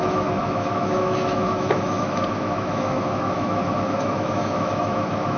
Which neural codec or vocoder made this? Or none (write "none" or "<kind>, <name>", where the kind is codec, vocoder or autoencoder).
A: autoencoder, DAC-VAE